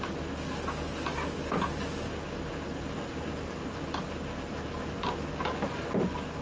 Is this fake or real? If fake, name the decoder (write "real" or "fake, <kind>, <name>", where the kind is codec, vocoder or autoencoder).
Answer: real